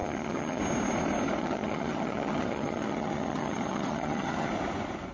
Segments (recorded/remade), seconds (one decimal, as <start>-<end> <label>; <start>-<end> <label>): 0.0-0.6 remade; 0.6-1.4 recorded; 1.4-4.5 remade; 4.5-5.1 recorded